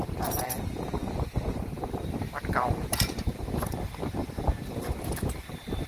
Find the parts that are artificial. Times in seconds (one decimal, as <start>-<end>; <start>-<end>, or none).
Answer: 0.0-5.9